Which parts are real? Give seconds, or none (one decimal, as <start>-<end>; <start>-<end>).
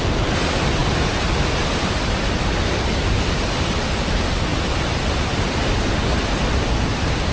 0.0-7.3